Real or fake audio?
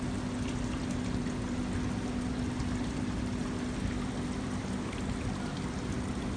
real